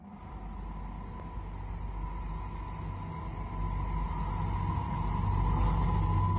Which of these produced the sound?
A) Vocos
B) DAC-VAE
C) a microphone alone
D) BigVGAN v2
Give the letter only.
C